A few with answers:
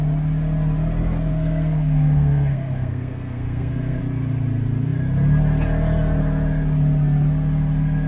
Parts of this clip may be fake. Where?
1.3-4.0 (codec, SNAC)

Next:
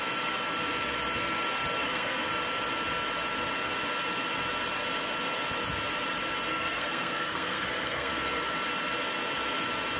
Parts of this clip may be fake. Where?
1.8-2.3 (codec, SNAC); 6.5-8.1